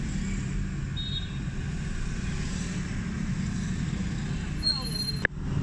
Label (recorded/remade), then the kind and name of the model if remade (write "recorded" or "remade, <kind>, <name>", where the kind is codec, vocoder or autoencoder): recorded